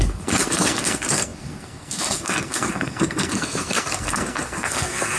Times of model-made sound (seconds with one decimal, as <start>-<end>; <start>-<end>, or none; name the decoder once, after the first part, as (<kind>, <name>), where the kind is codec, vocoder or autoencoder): 0.0-5.2 (codec, SNAC)